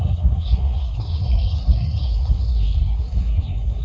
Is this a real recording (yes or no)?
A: no